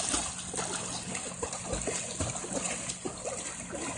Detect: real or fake real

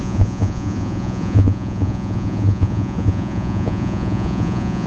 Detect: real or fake fake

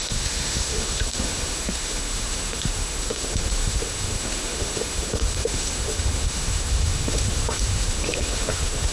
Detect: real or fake fake